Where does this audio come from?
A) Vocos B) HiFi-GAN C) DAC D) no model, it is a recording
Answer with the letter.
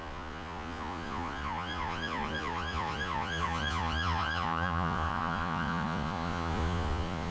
A